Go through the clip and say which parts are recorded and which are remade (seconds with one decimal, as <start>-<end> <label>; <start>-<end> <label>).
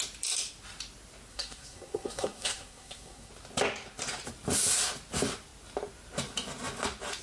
0.0-1.3 recorded; 1.3-3.3 remade; 3.3-7.2 recorded